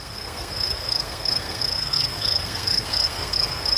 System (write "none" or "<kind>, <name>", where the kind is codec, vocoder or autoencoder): codec, SNAC